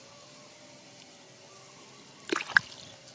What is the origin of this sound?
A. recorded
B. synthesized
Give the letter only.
A